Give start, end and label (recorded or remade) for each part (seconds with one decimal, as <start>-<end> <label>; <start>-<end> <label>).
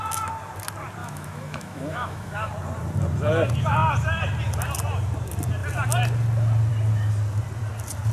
0.0-1.0 recorded; 1.0-2.5 remade; 2.5-8.1 recorded